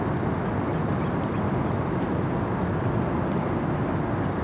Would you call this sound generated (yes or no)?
no